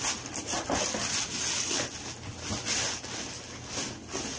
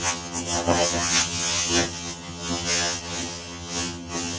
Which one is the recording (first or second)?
first